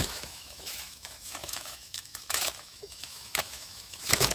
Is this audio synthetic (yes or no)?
yes